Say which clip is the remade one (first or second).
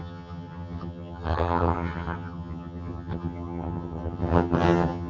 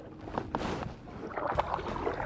first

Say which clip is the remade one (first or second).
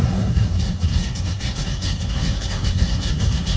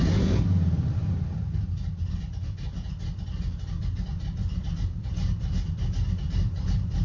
first